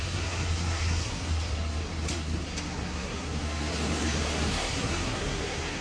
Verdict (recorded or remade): remade